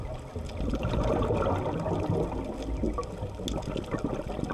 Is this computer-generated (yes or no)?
no